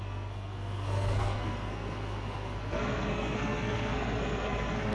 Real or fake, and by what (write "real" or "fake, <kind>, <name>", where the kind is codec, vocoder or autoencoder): fake, codec, SNAC